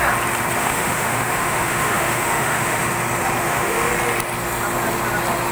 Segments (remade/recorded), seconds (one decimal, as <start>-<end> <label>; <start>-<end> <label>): 0.0-0.6 recorded; 0.6-2.9 remade; 2.9-3.4 recorded; 3.4-3.9 remade; 3.9-5.5 recorded